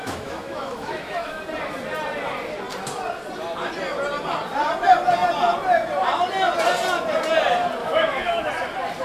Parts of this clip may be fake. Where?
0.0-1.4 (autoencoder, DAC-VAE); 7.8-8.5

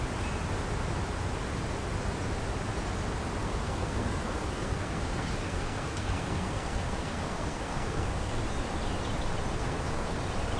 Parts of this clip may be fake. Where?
3.4-8.4 (codec, SNAC); 9.5-10.2